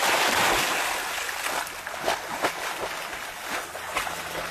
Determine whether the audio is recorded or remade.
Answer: recorded